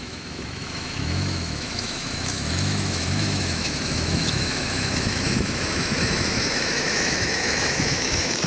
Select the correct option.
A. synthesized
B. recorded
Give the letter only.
A